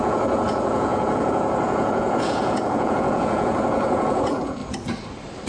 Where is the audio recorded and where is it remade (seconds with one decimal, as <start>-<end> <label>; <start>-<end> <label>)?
0.0-4.6 remade; 4.6-5.5 recorded